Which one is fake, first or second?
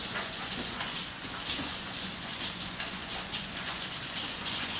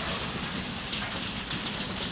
first